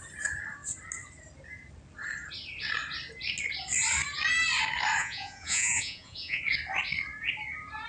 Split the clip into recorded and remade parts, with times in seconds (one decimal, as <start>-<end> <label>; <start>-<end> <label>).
0.0-5.0 recorded; 5.0-6.4 remade; 6.4-7.9 recorded

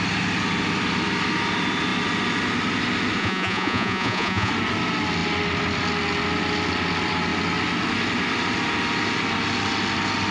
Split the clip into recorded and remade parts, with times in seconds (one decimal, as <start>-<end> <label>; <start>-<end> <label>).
0.0-3.2 recorded; 3.2-4.5 remade; 4.5-10.3 recorded

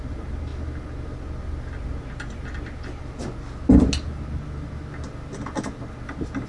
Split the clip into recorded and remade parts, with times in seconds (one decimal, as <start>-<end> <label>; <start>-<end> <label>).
0.0-6.5 recorded

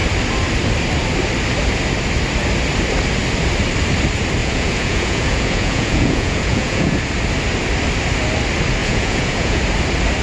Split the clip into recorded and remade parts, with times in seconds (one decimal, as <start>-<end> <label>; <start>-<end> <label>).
0.0-4.4 recorded; 4.4-7.0 remade; 7.0-8.8 recorded; 8.8-9.6 remade; 9.6-10.2 recorded

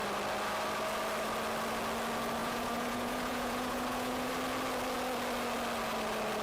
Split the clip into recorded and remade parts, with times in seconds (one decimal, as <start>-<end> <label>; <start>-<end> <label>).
0.0-2.4 recorded; 2.4-4.3 remade; 4.3-6.4 recorded

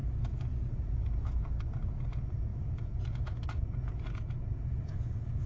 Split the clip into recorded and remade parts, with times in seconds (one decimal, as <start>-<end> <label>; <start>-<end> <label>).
0.0-5.5 remade

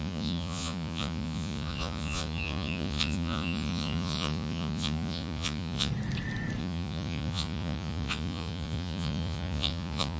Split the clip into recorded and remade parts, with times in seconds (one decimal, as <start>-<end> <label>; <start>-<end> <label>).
0.0-5.9 remade; 5.9-6.6 recorded; 6.6-10.2 remade

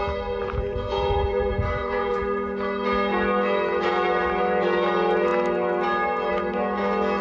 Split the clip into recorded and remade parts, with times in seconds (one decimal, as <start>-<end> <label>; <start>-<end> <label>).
0.0-0.4 recorded; 0.4-2.2 remade; 2.2-7.2 recorded